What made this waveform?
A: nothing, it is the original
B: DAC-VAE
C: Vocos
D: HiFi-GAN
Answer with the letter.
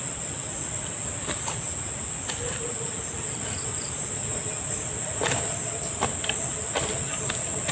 A